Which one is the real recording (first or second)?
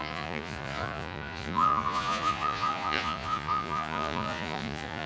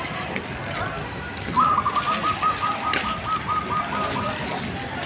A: second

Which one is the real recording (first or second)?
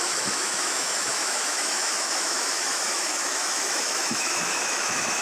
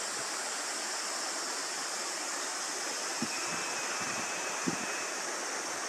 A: second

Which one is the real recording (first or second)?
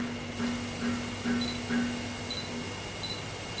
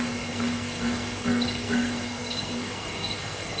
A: first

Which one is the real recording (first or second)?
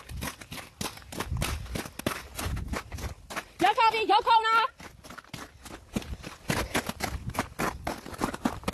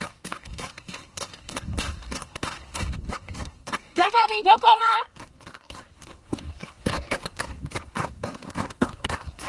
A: first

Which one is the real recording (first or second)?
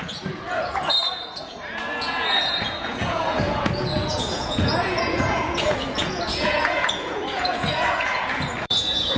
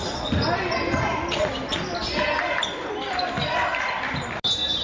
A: second